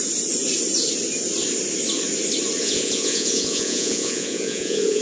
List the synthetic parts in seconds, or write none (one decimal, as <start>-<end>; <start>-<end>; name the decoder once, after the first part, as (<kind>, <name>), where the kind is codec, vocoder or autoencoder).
2.6-5.0 (vocoder, Vocos)